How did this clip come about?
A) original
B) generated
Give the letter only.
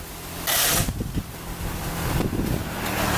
A